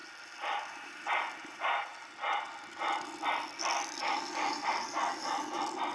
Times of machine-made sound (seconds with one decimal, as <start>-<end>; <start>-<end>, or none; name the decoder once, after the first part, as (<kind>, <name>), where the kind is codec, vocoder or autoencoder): none

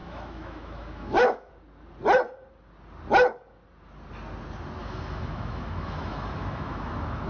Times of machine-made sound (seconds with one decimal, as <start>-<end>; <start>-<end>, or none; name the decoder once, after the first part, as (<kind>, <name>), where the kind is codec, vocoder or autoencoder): 0.0-1.5 (autoencoder, DAC-VAE); 4.8-7.3

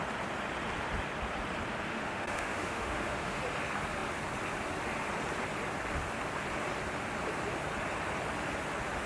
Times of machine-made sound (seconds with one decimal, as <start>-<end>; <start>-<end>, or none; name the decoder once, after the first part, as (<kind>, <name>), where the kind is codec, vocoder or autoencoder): 1.9-3.4 (autoencoder, DAC-VAE)

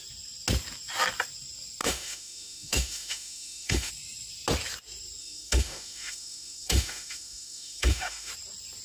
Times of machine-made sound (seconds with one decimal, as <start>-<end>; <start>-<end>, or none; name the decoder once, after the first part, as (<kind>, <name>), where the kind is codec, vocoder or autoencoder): 1.8-3.9 (autoencoder, DAC-VAE); 5.2-8.3

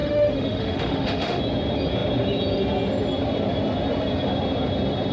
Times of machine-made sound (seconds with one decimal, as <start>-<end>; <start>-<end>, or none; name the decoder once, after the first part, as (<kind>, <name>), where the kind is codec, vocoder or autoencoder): 0.0-1.4 (autoencoder, DAC-VAE)

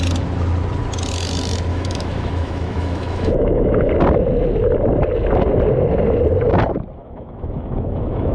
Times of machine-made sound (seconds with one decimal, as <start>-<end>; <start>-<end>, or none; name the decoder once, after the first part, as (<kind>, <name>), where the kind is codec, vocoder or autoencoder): 1.7-3.9 (autoencoder, DAC-VAE); 7.0-8.3

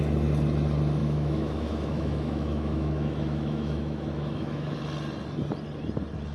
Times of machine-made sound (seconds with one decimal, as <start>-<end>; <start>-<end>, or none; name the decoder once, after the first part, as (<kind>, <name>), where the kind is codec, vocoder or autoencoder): 1.0-4.8 (autoencoder, DAC-VAE)

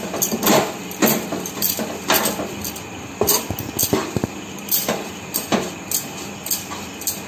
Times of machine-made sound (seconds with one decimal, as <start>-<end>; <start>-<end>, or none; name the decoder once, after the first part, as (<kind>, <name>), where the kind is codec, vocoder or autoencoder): none